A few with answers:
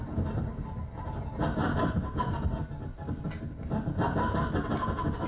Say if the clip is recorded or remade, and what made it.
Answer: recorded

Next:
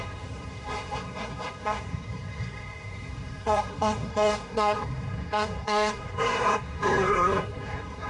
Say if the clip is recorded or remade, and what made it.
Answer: remade, codec, SNAC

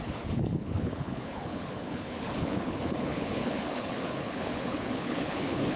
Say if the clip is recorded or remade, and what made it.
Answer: remade, codec, HILCodec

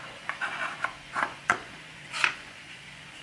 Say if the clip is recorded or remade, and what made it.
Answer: remade, vocoder, Vocos